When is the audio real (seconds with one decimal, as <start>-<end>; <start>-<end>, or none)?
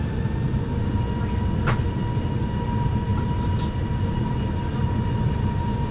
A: 0.0-5.9